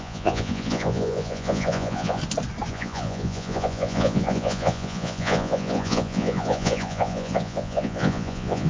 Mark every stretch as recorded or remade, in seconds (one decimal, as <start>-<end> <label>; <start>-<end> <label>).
0.0-2.2 remade; 2.2-2.7 recorded; 2.7-8.7 remade